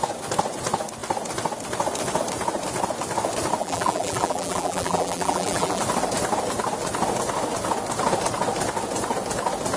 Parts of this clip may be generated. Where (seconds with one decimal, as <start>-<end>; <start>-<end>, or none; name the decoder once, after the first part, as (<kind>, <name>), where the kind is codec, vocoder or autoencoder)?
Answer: 3.6-5.8 (vocoder, BigVGAN v2)